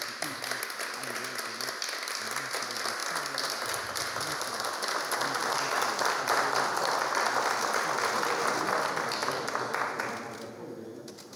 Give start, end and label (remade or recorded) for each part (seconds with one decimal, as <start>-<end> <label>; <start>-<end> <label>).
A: 0.0-11.4 recorded